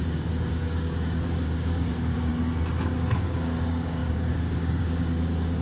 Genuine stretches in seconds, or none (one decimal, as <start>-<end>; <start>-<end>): 2.3-3.0